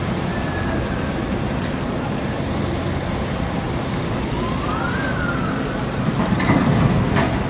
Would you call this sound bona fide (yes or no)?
yes